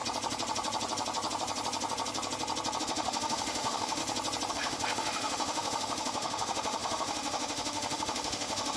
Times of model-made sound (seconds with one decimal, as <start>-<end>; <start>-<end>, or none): 2.8-4.0; 4.5-8.8